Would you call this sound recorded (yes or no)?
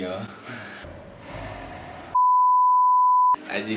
yes